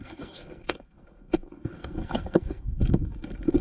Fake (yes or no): yes